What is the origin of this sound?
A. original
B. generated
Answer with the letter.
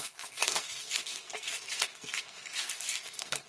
B